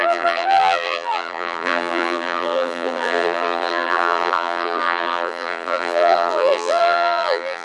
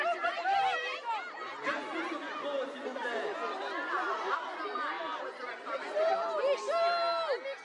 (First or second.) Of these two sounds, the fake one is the first